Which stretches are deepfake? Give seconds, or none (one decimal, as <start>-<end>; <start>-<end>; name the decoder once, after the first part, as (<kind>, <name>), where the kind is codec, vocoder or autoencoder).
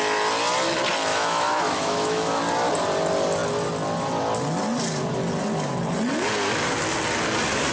1.1-2.4 (autoencoder, DAC-VAE)